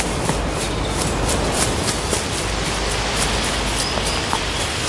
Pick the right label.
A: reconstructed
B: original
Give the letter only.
B